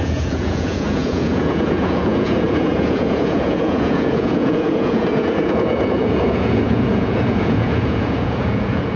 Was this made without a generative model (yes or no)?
no